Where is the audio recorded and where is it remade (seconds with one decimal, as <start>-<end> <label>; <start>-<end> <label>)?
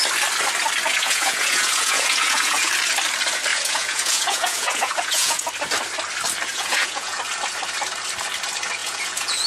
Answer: 0.0-0.9 recorded; 0.9-2.7 remade; 2.7-3.5 recorded; 3.5-5.5 remade; 5.5-6.5 recorded; 6.5-7.2 remade; 7.2-8.8 recorded; 8.8-9.5 remade